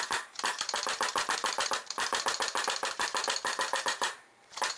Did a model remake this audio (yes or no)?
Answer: yes